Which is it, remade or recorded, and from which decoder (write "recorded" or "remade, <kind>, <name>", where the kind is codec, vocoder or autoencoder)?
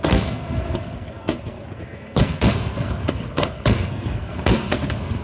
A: remade, codec, SNAC